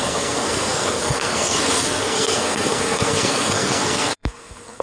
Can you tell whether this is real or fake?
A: fake